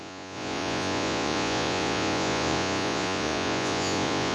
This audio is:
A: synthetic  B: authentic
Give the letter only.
A